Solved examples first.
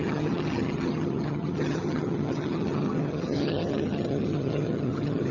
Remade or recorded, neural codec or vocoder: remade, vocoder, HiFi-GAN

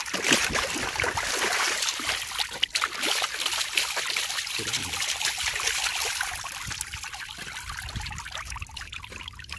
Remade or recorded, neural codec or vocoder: recorded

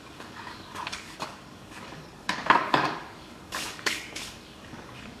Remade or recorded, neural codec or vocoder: remade, codec, DAC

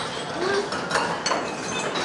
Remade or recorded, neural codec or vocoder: recorded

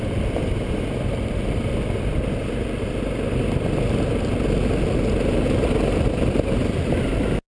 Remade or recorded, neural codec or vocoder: recorded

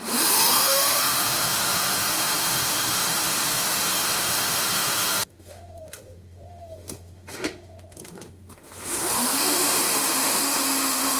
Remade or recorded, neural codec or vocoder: remade, autoencoder, DAC-VAE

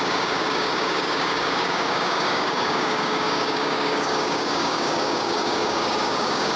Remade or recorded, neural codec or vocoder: remade, codec, DAC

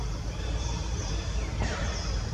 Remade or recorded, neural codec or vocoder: remade, vocoder, BigVGAN v2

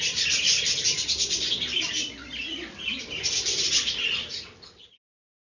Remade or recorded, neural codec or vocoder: recorded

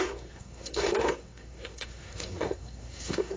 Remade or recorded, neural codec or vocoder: remade, codec, SNAC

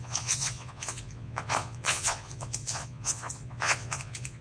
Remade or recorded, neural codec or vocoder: remade, vocoder, Vocos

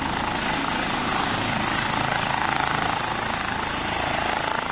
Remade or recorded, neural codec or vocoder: recorded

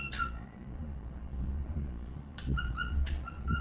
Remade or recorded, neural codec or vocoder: remade, vocoder, Vocos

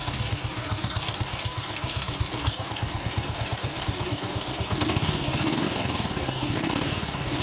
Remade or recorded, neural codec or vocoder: remade, codec, DAC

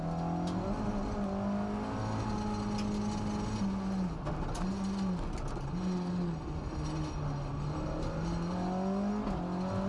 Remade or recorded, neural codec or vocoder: recorded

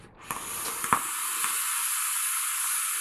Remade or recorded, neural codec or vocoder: recorded